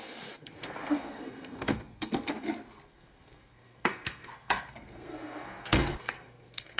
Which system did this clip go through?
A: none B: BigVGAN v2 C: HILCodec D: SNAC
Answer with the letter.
D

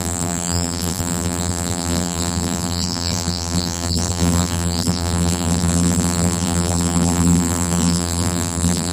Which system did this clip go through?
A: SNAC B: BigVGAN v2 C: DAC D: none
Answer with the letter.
B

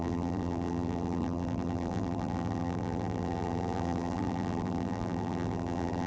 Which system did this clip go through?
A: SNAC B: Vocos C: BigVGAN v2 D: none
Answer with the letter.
C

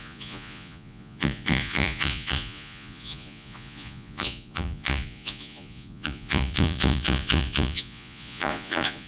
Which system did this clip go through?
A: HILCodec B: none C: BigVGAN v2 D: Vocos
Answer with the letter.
D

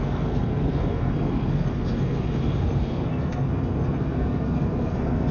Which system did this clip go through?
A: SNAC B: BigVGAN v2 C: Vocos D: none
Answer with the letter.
A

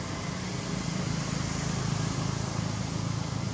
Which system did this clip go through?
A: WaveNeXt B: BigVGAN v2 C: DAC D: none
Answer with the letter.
D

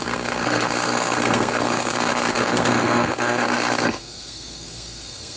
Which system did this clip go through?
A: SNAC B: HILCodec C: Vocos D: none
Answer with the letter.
A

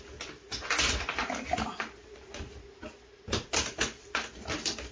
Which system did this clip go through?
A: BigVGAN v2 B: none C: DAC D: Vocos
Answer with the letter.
B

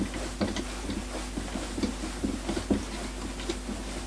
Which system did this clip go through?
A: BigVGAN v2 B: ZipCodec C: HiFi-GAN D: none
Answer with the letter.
D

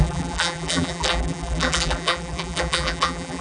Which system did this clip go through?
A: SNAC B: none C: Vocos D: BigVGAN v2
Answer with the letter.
D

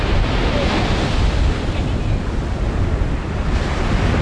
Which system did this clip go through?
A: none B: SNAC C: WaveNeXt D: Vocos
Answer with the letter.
A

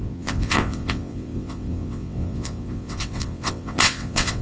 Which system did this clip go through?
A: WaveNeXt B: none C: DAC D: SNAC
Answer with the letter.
A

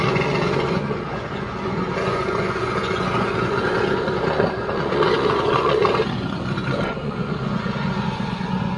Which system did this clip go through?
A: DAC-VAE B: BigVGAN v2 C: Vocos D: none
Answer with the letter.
C